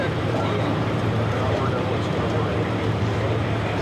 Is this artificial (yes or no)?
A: yes